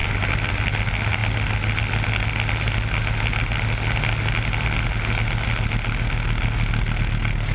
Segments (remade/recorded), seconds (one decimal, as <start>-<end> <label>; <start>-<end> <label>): 0.0-7.5 recorded